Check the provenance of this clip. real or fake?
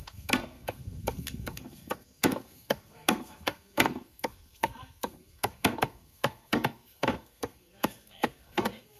fake